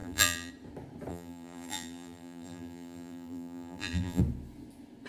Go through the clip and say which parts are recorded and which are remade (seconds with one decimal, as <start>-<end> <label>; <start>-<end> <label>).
0.0-0.5 remade; 0.5-1.1 recorded; 1.1-4.2 remade; 4.2-5.1 recorded